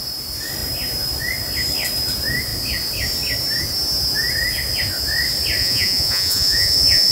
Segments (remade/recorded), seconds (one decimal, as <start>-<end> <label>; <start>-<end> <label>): 0.0-5.6 recorded; 5.6-7.1 remade